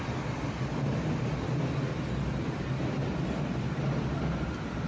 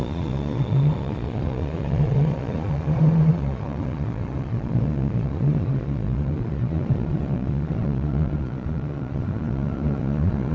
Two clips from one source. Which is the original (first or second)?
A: first